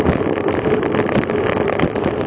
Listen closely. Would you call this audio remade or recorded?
recorded